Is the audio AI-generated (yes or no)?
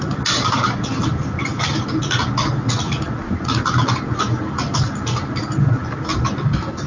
no